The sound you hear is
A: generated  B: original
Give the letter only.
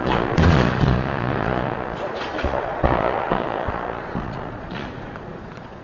A